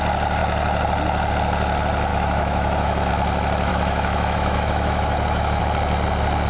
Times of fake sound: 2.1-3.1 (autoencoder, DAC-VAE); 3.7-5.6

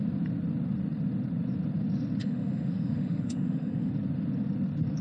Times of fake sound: 2.2-3.9 (autoencoder, DAC-VAE)

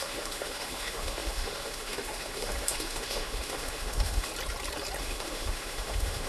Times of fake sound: 0.0-4.3 (autoencoder, DAC-VAE); 5.0-6.3

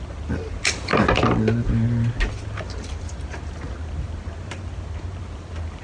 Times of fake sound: none

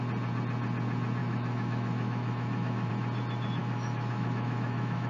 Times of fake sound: 1.2-2.9 (autoencoder, DAC-VAE); 3.6-5.1

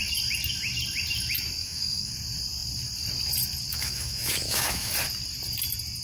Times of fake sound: 1.6-2.1 (autoencoder, DAC-VAE); 3.7-4.9

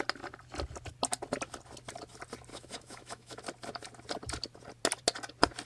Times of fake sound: 2.5-3.4 (autoencoder, DAC-VAE)